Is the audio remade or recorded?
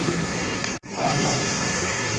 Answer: remade